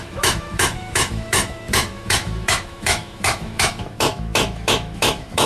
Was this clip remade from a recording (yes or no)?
yes